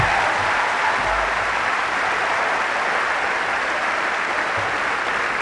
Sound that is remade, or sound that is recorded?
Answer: recorded